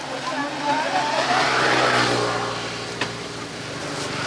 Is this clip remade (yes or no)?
no